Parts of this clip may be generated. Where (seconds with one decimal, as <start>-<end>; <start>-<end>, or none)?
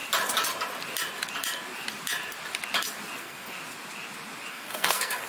3.2-3.6; 4.5-5.3